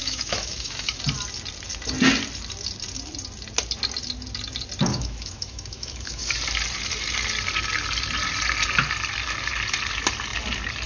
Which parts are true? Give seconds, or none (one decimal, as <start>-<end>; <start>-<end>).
1.0-4.9; 6.2-10.9